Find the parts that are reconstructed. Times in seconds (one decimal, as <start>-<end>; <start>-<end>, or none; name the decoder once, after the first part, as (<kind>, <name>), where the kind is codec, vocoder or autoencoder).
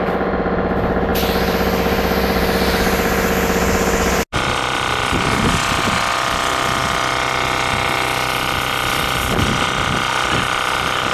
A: none